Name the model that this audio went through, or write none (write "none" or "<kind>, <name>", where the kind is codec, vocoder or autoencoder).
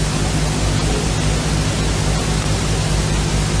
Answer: none